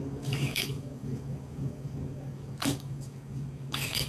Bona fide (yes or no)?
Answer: no